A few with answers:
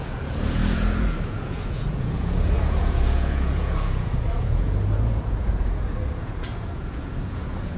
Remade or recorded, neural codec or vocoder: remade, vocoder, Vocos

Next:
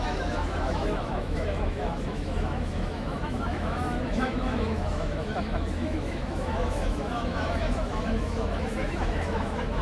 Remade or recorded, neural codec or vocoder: remade, autoencoder, DAC-VAE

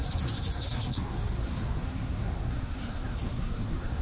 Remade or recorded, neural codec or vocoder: remade, codec, SNAC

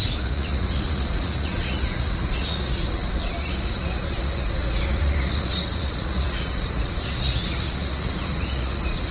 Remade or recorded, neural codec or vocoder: remade, vocoder, Vocos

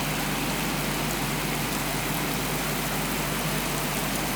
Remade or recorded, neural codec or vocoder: recorded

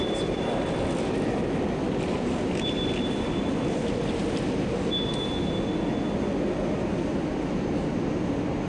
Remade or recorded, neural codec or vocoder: recorded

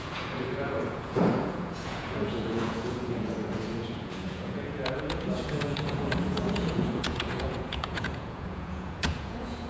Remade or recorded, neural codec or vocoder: remade, vocoder, Vocos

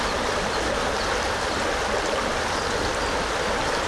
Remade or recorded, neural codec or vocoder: recorded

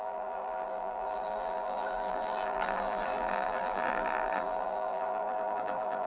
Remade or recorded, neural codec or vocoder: remade, vocoder, BigVGAN v2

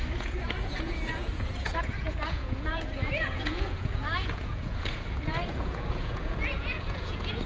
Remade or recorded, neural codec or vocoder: remade, vocoder, Vocos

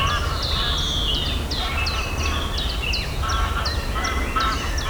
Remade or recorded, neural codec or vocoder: recorded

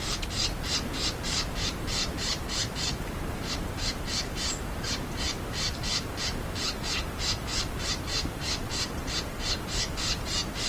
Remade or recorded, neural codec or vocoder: remade, vocoder, BigVGAN v2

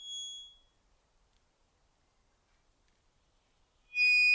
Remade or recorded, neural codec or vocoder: recorded